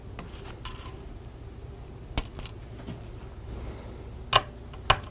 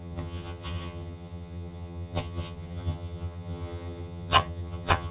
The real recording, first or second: first